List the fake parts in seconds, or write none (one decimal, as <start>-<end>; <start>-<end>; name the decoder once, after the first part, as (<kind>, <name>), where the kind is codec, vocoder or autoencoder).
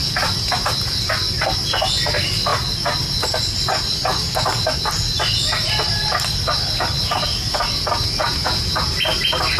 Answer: 8.2-8.9 (vocoder, Vocos)